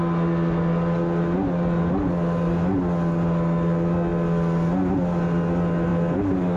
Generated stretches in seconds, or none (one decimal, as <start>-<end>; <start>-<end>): none